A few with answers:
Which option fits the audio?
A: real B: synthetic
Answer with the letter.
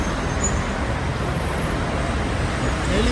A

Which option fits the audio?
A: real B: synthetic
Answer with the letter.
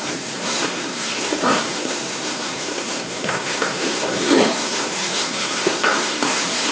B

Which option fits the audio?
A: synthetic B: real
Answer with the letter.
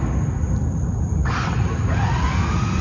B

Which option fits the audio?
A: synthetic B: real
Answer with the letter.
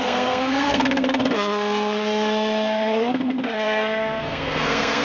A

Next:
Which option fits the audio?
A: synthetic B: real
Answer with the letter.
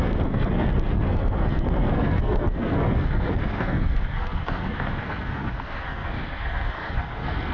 A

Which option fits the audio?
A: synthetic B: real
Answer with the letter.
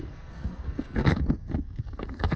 A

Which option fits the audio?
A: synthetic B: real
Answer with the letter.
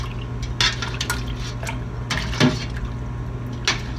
B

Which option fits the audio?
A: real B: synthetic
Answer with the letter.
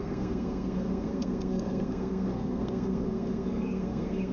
B